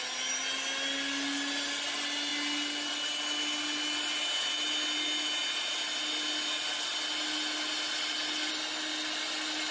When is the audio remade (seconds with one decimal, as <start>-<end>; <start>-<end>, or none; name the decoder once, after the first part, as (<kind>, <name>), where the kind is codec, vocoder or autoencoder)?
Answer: none